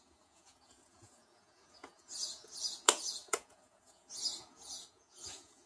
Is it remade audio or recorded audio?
remade